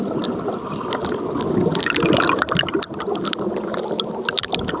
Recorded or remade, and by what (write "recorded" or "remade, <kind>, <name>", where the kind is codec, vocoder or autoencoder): recorded